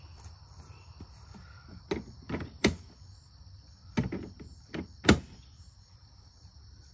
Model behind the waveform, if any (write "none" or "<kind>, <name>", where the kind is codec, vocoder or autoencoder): none